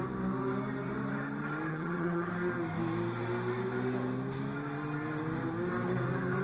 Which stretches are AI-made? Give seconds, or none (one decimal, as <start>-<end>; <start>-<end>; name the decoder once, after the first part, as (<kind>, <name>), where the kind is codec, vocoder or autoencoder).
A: 1.7-2.3 (vocoder, HiFi-GAN)